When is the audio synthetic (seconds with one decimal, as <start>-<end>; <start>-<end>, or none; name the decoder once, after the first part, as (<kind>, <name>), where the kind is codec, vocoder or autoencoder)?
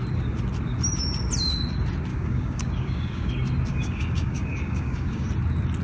2.1-3.3 (codec, DAC); 3.7-5.3